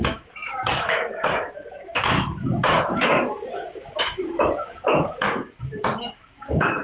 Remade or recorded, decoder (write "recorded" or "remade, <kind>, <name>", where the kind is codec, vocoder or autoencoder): remade, autoencoder, DAC-VAE